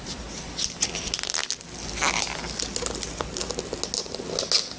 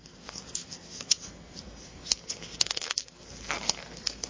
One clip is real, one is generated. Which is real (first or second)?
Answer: first